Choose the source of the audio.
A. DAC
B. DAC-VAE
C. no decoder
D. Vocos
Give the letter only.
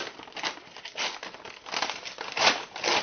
C